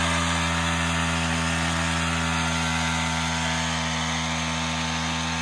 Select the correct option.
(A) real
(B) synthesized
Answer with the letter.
A